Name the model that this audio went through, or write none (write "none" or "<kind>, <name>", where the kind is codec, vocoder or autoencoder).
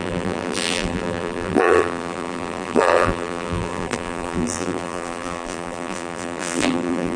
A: vocoder, BigVGAN v2